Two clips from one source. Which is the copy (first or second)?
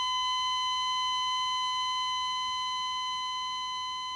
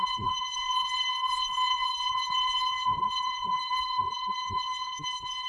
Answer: second